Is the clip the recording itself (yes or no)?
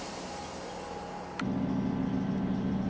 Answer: yes